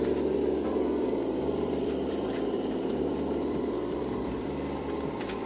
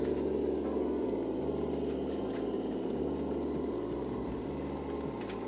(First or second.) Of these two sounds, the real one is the second